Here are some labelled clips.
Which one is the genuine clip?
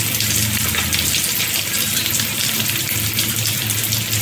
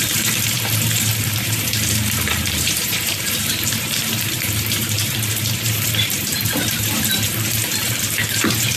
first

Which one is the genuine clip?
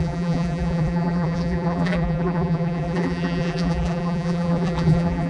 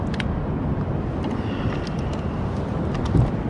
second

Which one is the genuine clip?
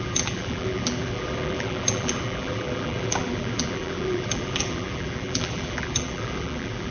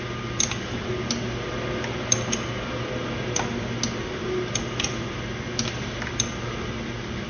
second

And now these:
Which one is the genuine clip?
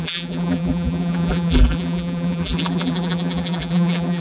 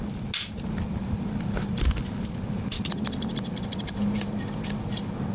second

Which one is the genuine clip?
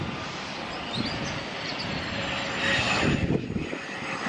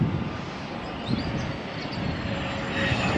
second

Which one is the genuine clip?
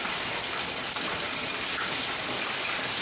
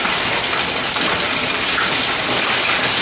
second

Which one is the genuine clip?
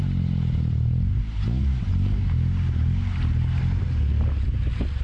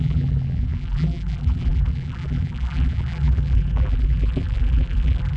first